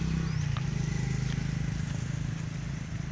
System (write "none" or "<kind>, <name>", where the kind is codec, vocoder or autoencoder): none